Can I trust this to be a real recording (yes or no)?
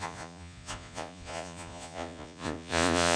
no